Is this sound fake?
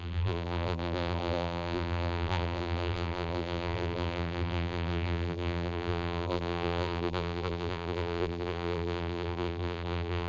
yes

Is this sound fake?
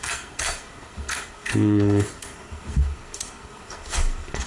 yes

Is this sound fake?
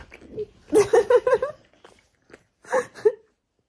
yes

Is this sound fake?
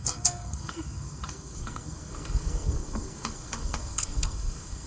yes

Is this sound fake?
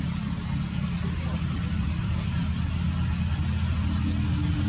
no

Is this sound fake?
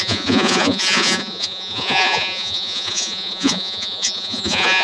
yes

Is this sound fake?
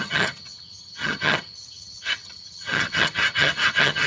yes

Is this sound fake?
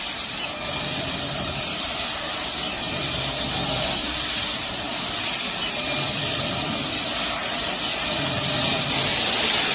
yes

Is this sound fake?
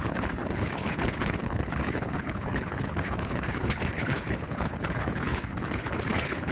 yes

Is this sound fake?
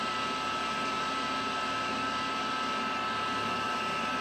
no